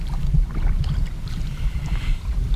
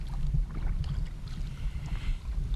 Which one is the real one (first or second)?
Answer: second